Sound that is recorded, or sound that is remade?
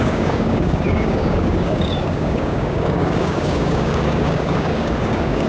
remade